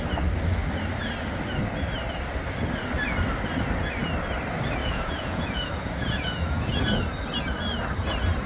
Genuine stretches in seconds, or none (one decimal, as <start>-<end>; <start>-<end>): 0.0-4.8; 7.0-8.5